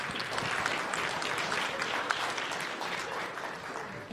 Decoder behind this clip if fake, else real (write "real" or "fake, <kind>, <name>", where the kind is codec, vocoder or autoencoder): real